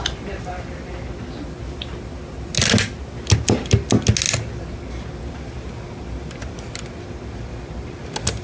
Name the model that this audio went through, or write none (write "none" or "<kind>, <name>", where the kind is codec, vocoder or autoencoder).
none